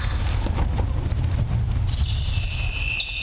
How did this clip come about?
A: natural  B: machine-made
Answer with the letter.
A